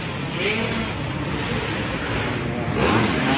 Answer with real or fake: real